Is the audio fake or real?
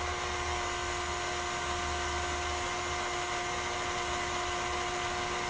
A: real